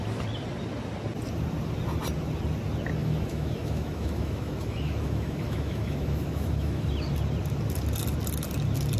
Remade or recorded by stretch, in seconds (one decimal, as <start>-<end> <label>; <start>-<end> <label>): 0.0-3.0 recorded; 3.0-6.9 remade; 6.9-9.0 recorded